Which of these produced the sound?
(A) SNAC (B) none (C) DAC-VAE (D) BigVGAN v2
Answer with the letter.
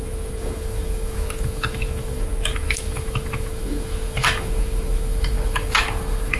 C